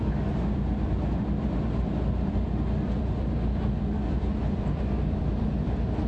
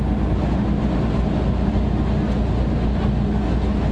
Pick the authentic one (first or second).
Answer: second